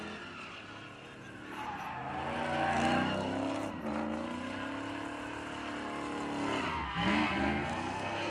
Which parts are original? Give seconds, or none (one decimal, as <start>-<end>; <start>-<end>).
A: 0.0-6.7